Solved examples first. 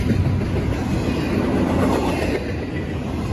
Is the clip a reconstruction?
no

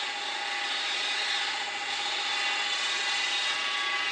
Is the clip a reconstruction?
no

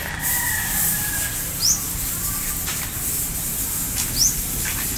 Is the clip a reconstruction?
no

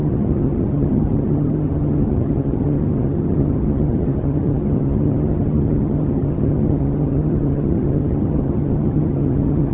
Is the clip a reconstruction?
yes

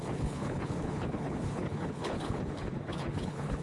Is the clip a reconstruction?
yes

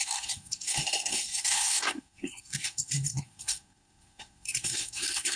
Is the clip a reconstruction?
yes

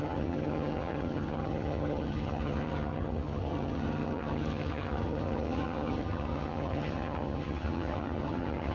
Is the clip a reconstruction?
yes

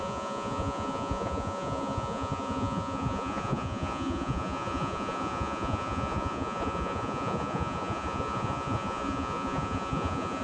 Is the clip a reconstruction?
yes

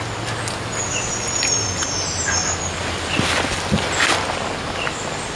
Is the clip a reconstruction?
no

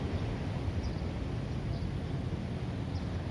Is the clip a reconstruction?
no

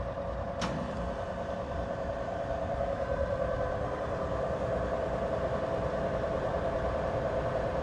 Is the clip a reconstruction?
yes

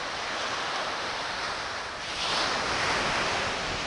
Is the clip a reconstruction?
no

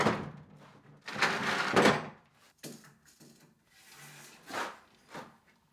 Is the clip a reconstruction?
no